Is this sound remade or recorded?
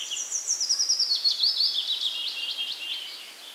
recorded